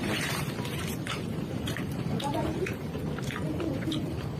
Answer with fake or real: fake